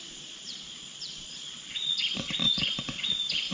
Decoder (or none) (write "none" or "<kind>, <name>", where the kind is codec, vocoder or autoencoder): vocoder, Vocos